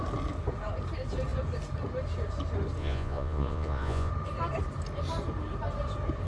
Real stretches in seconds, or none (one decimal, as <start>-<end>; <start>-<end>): 0.0-2.8; 4.1-6.3